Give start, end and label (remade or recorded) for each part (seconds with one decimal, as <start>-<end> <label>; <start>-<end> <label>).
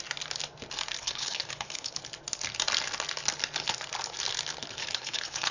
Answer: 0.0-1.0 recorded; 1.0-2.0 remade; 2.0-4.8 recorded; 4.8-5.5 remade